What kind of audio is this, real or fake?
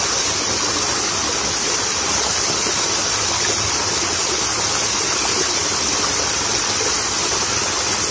real